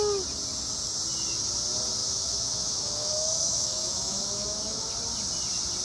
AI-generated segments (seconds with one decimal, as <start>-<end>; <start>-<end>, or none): 2.0-4.9